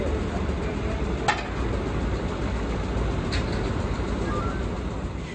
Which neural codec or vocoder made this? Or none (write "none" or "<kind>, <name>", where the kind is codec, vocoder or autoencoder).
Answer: none